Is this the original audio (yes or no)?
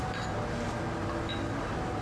yes